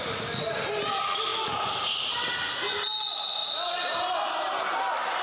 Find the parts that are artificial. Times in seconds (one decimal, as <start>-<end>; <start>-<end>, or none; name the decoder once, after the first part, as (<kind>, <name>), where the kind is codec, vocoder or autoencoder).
none